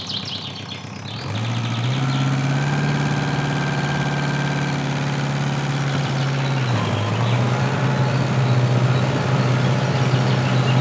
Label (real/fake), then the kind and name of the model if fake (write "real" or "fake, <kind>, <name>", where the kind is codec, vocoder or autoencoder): real